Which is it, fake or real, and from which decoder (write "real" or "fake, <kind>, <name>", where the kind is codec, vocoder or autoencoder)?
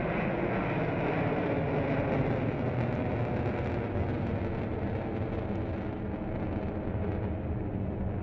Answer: real